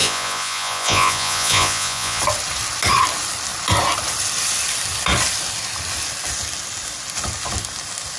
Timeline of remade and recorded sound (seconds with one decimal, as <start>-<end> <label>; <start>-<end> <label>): 0.0-2.2 remade; 2.2-8.2 recorded